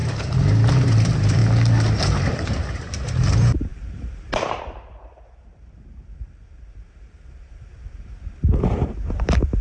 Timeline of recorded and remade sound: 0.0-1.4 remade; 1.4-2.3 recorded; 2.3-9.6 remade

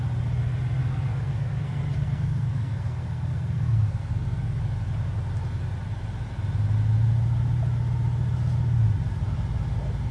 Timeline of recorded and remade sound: 0.0-0.8 recorded; 0.8-4.6 remade; 4.6-10.1 recorded